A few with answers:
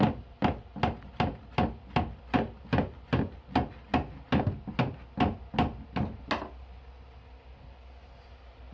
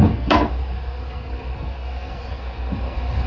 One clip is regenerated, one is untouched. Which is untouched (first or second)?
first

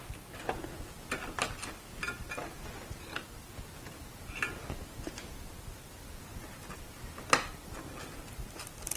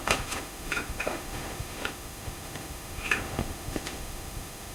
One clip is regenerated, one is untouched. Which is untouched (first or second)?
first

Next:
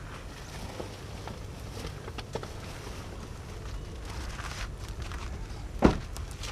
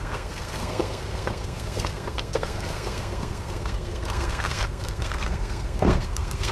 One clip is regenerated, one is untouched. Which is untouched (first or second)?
first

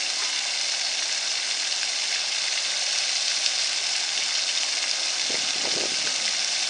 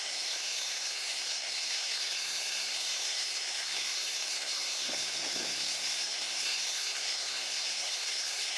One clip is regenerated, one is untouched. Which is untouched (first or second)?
first